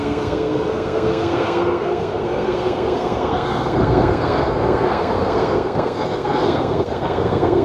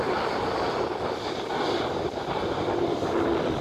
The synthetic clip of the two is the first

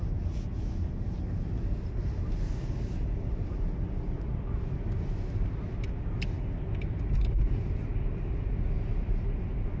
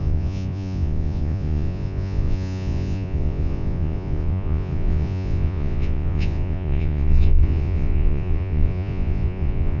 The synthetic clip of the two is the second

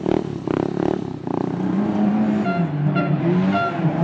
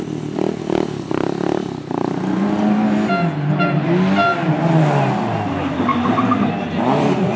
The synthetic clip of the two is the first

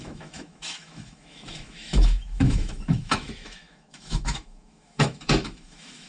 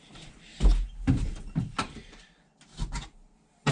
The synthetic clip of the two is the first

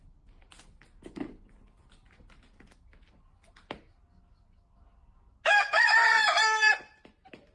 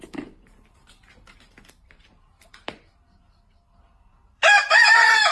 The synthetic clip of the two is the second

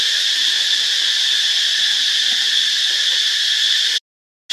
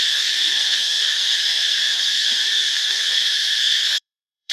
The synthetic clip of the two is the second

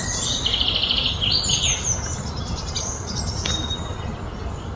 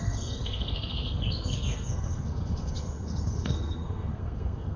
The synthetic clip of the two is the second